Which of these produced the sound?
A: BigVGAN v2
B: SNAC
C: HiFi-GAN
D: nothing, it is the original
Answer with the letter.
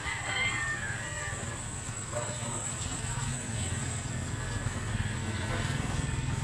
B